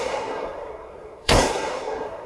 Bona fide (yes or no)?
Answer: no